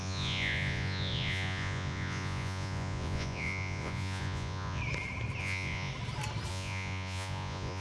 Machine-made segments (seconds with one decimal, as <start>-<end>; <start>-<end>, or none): 0.0-4.8; 5.4-5.9; 6.5-7.8